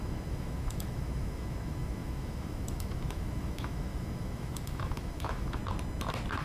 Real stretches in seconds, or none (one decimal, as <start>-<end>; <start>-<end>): 5.6-6.4